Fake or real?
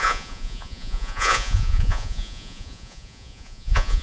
fake